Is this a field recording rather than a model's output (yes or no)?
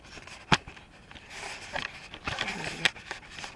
yes